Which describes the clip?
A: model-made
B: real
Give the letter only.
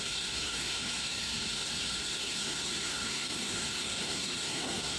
A